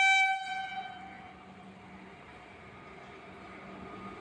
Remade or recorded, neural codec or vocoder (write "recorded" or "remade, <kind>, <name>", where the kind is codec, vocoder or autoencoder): recorded